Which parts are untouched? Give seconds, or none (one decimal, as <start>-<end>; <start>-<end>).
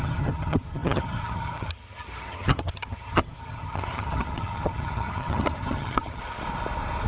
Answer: 6.2-7.1